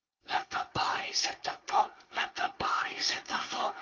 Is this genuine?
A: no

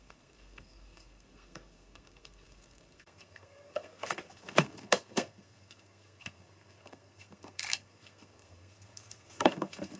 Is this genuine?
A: no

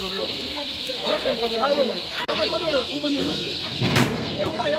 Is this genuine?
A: no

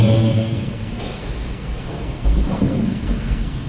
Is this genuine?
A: no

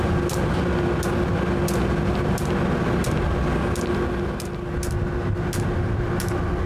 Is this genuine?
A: yes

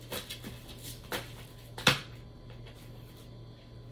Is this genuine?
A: yes